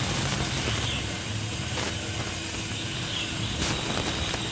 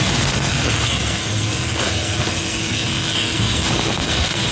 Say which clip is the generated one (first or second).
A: second